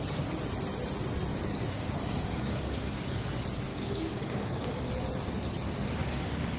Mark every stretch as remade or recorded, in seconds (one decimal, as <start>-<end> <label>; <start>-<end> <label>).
0.0-1.3 recorded; 1.3-3.3 remade; 3.3-3.7 recorded; 3.7-4.9 remade; 4.9-6.0 recorded; 6.0-6.6 remade